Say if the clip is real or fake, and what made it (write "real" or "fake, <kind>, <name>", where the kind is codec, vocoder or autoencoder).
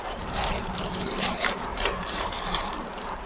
fake, vocoder, BigVGAN v2